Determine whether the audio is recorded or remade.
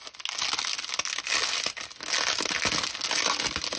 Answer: recorded